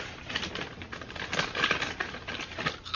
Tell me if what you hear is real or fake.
real